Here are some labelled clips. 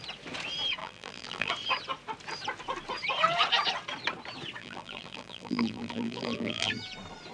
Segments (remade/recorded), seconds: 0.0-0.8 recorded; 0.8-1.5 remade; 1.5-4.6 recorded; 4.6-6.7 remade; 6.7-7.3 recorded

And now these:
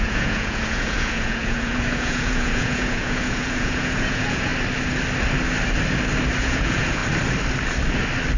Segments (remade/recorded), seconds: 0.0-4.5 remade; 4.5-6.4 recorded; 6.4-7.0 remade; 7.0-8.4 recorded

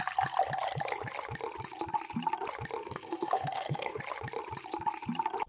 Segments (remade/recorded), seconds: 0.0-2.8 recorded; 2.8-4.0 remade; 4.0-5.5 recorded

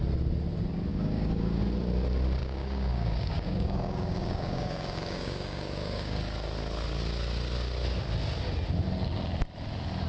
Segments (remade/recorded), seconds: 0.0-0.9 recorded; 0.9-1.6 remade; 1.6-2.4 recorded; 2.4-6.2 remade; 6.2-10.1 recorded

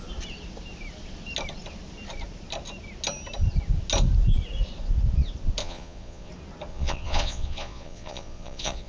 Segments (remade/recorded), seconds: 0.0-5.6 recorded; 5.6-6.3 remade; 6.3-6.7 recorded; 6.7-8.9 remade

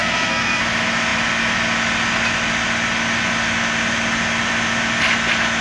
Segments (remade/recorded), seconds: 0.0-0.6 remade; 0.6-5.6 recorded